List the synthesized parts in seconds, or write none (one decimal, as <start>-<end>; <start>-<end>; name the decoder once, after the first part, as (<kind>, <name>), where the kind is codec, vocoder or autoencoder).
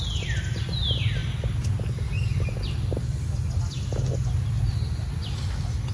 none